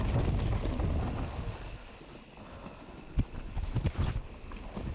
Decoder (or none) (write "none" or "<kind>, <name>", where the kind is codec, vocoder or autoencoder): none